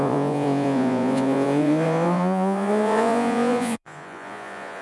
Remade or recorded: remade